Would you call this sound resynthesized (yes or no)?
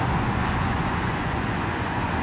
yes